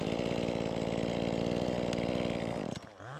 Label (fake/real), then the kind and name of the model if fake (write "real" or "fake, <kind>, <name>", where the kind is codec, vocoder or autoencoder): real